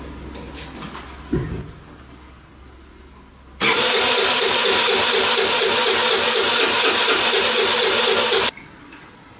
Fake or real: real